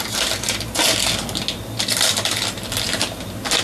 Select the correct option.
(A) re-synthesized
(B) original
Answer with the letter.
B